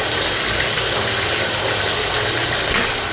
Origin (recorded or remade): recorded